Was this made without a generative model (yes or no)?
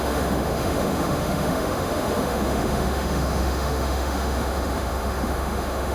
no